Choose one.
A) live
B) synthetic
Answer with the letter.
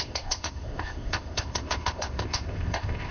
B